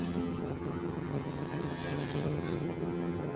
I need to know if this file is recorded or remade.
remade